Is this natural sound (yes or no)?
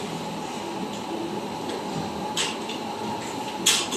yes